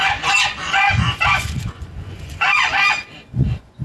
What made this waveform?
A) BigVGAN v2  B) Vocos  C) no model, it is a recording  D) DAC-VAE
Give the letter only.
B